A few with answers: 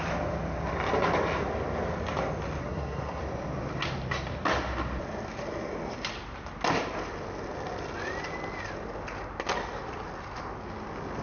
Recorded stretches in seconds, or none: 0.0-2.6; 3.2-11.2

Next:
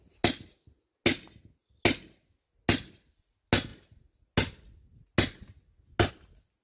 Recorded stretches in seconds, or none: 0.0-6.6

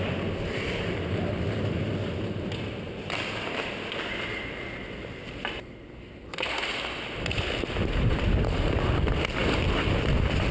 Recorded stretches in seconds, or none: 0.0-10.5

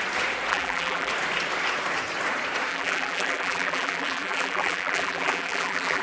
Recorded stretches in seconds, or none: 0.0-0.5; 1.1-2.7

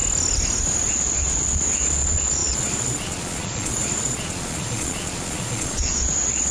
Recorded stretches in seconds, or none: 0.0-0.9

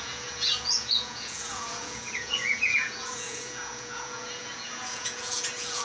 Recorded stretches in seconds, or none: none

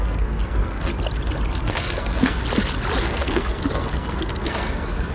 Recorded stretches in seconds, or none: 0.9-1.5; 2.4-3.0

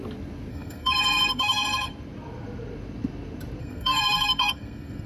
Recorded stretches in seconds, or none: 0.0-0.5; 1.9-3.6